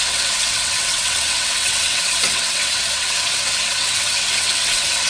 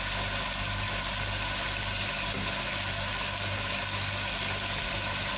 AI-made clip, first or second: first